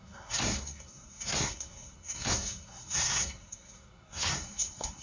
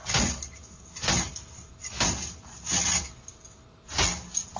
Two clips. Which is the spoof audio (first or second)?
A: first